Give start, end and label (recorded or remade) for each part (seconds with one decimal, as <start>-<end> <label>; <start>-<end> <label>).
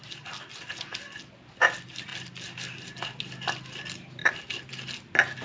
0.0-5.4 recorded